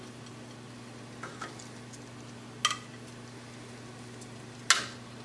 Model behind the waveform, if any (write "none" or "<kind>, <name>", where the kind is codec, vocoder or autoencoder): none